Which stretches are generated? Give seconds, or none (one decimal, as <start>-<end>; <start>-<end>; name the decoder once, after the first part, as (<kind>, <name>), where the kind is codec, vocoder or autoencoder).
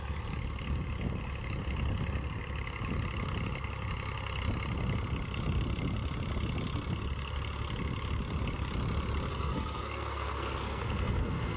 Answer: 9.3-11.6 (codec, SNAC)